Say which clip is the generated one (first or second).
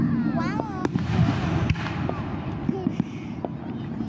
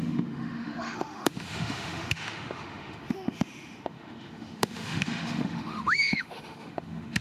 second